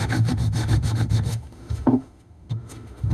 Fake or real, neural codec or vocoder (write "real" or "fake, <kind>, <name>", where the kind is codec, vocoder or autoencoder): fake, autoencoder, DAC-VAE